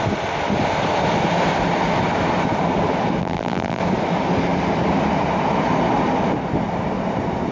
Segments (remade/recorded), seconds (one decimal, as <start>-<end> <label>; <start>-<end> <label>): 0.0-3.2 recorded; 3.2-3.8 remade; 3.8-7.5 recorded